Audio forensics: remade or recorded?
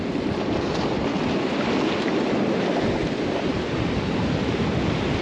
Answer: recorded